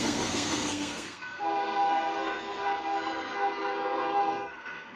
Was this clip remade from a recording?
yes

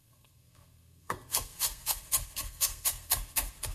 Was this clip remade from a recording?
yes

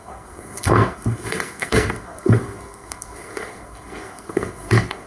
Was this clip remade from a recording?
yes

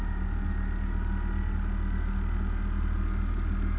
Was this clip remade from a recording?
no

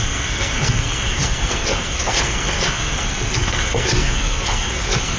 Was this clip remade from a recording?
yes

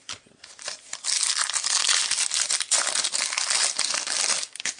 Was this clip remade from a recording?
no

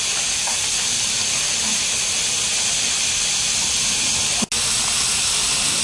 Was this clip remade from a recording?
no